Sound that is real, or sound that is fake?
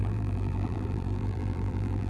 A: fake